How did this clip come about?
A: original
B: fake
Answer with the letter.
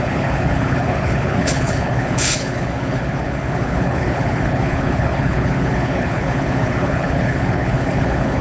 B